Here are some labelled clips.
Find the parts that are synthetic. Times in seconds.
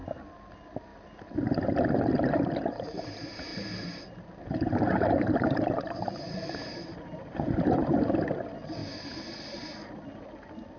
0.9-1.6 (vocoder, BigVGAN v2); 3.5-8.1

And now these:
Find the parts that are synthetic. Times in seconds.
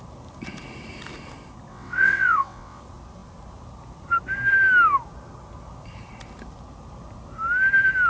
1.7-2.8 (vocoder, WaveNeXt)